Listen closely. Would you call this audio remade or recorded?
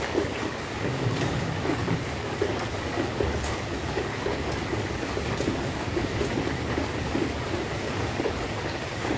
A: remade